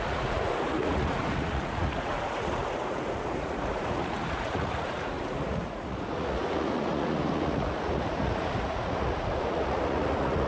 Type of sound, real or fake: fake